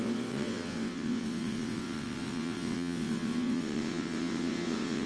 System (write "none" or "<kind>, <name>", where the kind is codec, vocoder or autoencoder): vocoder, WaveNeXt